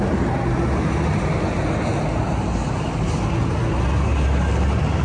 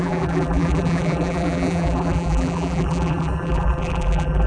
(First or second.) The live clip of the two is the first